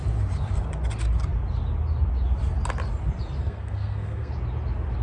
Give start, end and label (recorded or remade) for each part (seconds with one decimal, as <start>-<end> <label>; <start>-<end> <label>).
0.0-3.4 recorded; 3.4-4.3 remade; 4.3-5.0 recorded